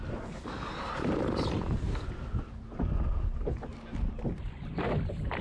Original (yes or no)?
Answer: yes